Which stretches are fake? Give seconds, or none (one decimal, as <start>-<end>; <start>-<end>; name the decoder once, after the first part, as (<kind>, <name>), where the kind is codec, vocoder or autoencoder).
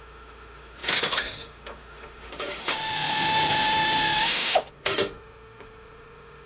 0.0-6.5 (autoencoder, DAC-VAE)